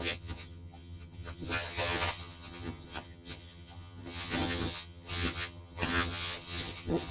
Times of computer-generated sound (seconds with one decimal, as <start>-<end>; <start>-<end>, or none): 0.0-7.1